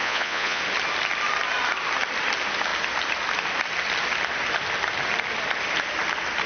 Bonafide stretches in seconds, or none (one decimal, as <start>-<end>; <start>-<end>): 0.6-6.5